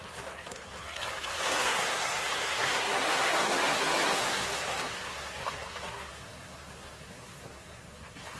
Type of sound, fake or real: fake